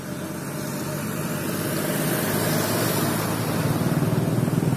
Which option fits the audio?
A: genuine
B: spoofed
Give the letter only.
A